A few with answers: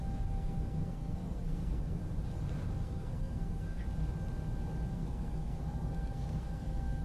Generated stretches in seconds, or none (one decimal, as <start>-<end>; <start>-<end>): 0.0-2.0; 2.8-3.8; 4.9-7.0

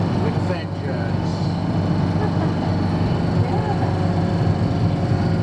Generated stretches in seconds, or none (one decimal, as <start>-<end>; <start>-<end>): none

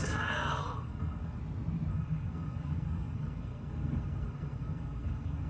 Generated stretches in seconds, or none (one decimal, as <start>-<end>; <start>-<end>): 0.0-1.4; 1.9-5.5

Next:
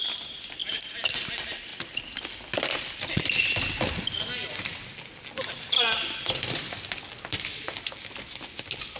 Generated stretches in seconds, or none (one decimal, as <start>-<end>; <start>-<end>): none